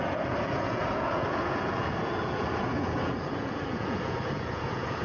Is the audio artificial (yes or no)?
yes